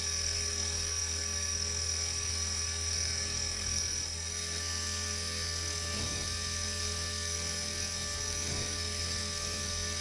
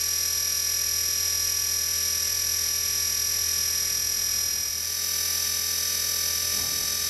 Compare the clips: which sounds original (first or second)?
second